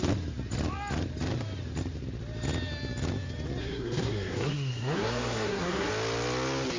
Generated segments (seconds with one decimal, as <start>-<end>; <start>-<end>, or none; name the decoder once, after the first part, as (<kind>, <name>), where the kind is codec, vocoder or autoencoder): 3.6-5.9 (codec, SNAC)